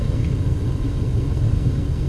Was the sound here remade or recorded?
remade